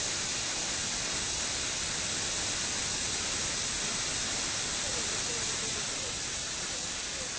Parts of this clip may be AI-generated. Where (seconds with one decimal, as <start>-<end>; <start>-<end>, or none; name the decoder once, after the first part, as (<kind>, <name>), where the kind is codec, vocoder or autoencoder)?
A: none